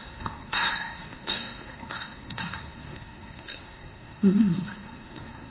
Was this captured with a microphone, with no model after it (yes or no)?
no